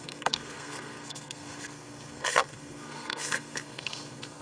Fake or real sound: fake